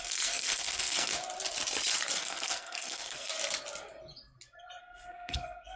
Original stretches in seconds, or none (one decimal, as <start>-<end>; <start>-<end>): 1.1-2.2; 3.3-4.8